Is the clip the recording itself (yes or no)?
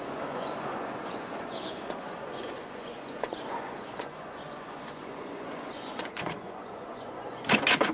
no